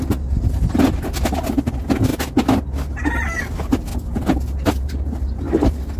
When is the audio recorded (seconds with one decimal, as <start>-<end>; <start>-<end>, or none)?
0.0-6.0